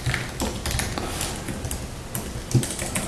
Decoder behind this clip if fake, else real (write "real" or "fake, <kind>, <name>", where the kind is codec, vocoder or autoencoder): real